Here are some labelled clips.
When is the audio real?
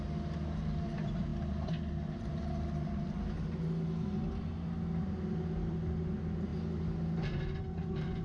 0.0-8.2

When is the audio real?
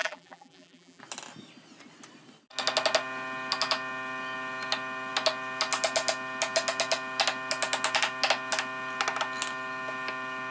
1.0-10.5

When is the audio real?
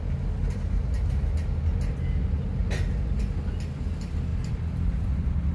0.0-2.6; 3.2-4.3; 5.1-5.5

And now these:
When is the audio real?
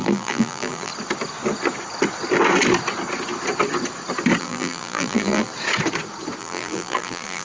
0.9-4.4; 5.5-6.4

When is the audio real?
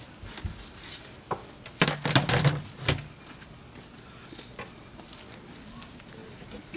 0.0-6.2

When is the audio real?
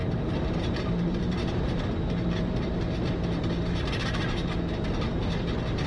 3.1-5.9